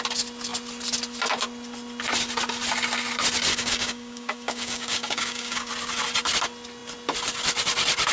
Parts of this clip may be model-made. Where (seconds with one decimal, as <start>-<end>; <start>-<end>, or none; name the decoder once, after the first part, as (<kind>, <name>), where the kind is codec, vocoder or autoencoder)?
3.5-5.7 (codec, DAC)